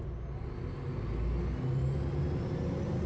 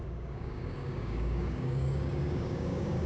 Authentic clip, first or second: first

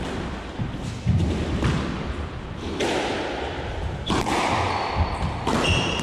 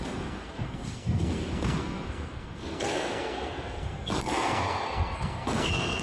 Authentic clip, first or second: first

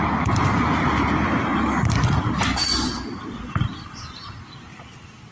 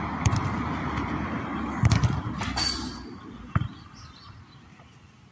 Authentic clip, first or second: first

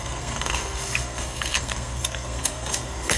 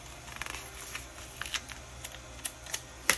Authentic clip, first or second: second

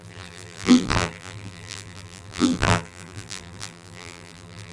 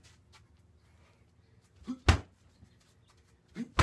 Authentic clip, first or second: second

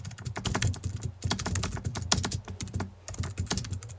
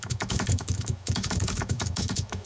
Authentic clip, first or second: first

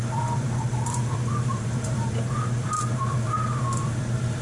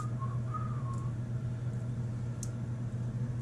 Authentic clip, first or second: second